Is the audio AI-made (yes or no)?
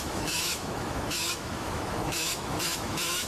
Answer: yes